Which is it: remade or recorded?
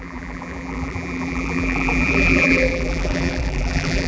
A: remade